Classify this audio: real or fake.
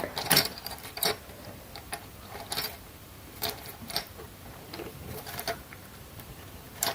fake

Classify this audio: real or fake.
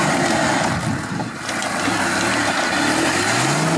real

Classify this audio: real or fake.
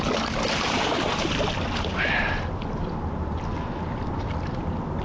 real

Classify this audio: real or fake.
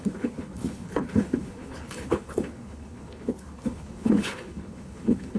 fake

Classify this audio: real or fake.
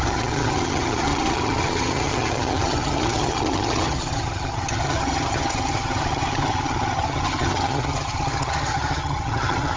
fake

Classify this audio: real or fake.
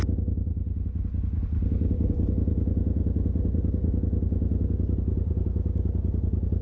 real